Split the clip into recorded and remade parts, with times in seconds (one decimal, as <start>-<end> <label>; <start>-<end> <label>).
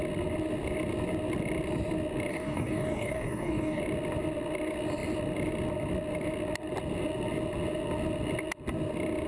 0.0-2.3 recorded; 2.3-3.8 remade; 3.8-9.3 recorded